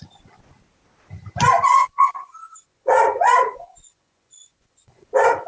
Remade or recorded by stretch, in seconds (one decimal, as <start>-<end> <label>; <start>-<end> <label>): 0.0-1.8 recorded; 1.8-5.1 remade; 5.1-5.5 recorded